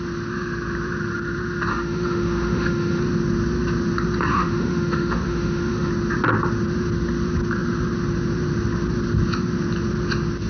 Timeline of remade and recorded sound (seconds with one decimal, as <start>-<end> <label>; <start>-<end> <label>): 0.0-1.7 recorded; 1.7-3.0 remade; 3.0-4.3 recorded; 4.3-5.9 remade; 5.9-10.5 recorded